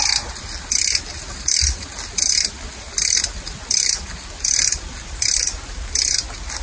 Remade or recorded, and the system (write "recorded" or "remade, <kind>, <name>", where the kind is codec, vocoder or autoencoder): recorded